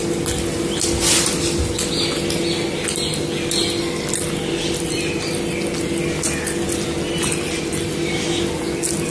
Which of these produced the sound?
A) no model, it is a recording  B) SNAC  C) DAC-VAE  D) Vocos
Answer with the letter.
A